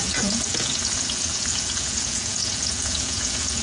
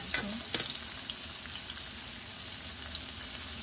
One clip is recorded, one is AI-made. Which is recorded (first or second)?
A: second